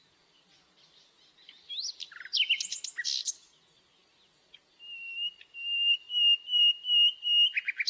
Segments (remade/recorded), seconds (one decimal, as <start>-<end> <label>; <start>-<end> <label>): 0.0-7.9 recorded